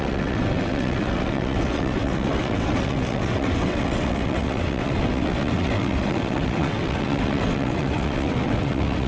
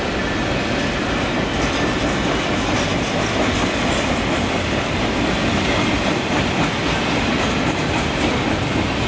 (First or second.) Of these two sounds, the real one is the second